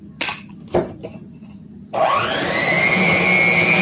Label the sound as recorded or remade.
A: recorded